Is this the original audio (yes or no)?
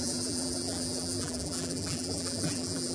no